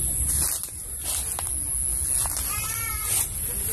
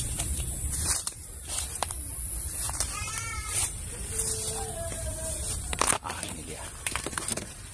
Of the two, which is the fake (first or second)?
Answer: second